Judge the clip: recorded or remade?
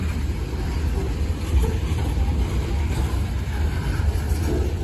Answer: recorded